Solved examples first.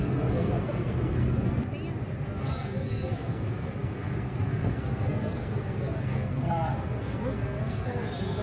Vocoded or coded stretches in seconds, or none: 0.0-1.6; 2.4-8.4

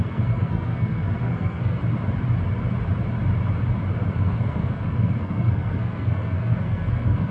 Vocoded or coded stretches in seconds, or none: 0.0-1.8; 4.1-7.3